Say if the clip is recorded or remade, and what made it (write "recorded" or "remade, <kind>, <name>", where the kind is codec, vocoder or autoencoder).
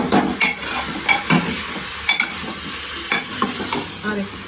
recorded